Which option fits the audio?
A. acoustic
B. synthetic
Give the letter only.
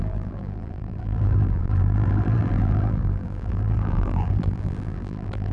B